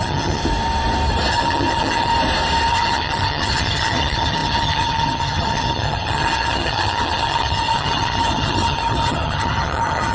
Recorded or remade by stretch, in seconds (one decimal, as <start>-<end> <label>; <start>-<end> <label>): 0.0-0.4 remade; 0.4-1.3 recorded; 1.3-2.1 remade; 2.1-2.7 recorded; 2.7-10.1 remade